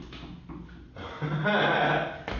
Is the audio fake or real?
real